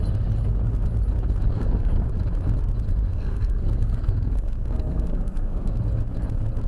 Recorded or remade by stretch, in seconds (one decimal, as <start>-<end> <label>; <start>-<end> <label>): 0.0-1.5 recorded; 1.5-2.1 remade; 2.1-3.1 recorded; 3.1-5.8 remade; 5.8-6.7 recorded